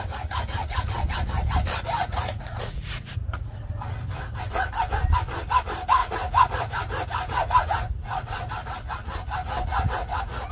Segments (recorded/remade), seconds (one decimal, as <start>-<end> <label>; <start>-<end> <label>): 0.0-2.0 recorded; 2.0-3.6 remade; 3.6-6.0 recorded; 6.0-8.5 remade; 8.5-9.7 recorded; 9.7-10.5 remade